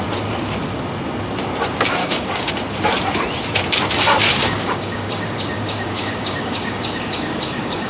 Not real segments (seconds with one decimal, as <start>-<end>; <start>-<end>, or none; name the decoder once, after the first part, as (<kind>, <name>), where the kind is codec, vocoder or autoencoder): 2.0-2.5 (codec, DAC); 4.3-7.9